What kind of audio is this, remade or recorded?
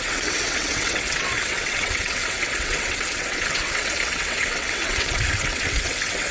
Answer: remade